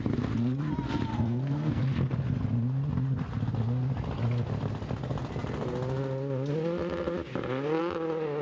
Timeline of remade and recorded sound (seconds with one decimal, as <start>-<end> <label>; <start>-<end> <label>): 0.0-1.1 recorded; 1.1-1.8 remade; 1.8-8.4 recorded